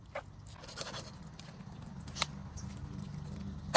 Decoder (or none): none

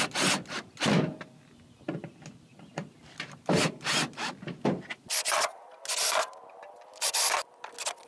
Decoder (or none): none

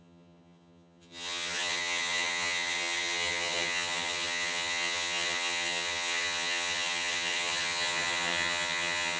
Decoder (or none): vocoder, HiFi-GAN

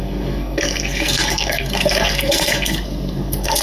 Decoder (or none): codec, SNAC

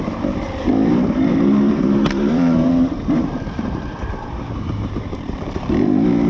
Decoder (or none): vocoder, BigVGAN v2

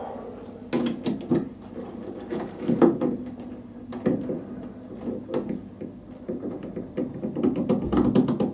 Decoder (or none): none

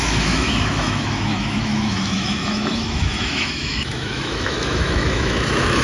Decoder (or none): autoencoder, DAC-VAE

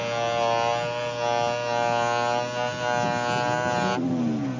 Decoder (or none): none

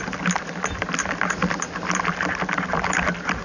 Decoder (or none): none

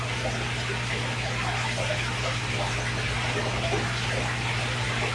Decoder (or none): none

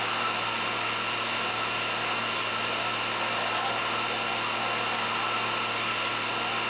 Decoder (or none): none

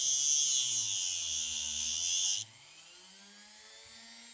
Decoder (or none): none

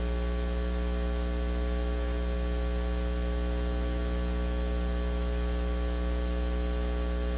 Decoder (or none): none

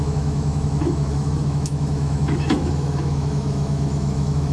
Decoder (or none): autoencoder, DAC-VAE